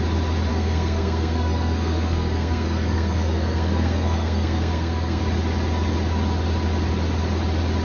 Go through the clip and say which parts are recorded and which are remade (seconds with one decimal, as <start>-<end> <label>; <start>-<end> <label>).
0.0-0.5 recorded; 0.5-5.2 remade; 5.2-7.8 recorded